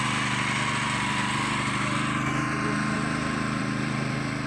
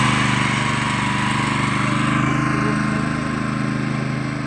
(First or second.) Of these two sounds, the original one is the second